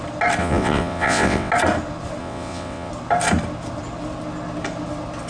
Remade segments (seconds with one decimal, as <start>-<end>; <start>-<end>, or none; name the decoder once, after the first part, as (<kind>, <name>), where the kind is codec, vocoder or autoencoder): 0.4-1.5 (vocoder, WaveNeXt); 2.2-2.9